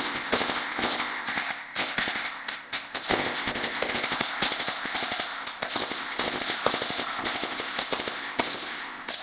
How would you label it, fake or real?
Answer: fake